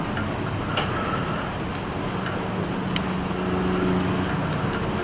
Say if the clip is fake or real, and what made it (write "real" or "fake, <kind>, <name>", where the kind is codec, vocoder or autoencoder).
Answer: real